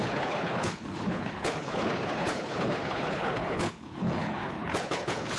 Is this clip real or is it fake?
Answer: fake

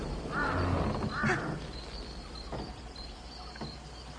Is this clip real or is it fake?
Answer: real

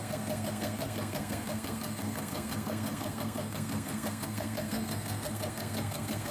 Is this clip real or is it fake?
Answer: fake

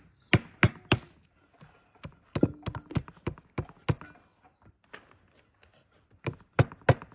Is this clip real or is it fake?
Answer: real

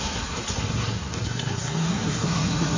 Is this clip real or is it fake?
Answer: fake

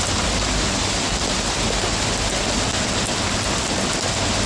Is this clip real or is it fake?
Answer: real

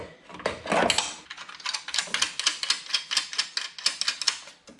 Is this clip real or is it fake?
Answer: real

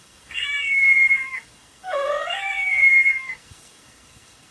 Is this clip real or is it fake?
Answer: fake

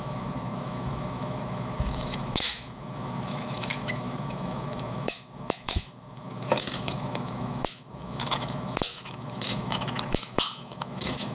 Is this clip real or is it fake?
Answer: fake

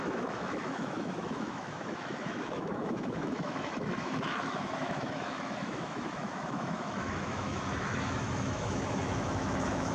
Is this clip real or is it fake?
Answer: fake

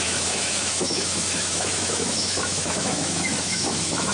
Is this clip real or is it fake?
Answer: fake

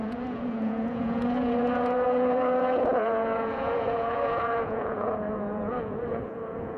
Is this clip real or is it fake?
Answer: fake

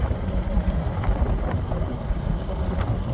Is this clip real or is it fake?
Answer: real